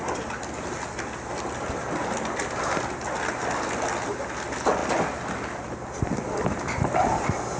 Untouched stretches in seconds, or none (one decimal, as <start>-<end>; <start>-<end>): 0.0-7.6